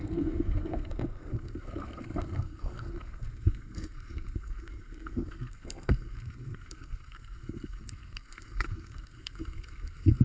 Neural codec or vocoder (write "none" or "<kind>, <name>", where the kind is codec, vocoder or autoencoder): codec, SNAC